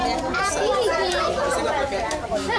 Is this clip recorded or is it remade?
recorded